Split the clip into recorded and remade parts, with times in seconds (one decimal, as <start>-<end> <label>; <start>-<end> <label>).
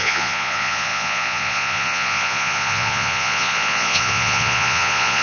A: 0.0-5.2 remade